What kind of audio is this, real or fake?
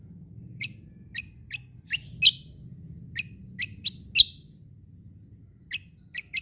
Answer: real